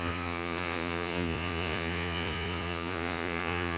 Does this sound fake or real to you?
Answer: fake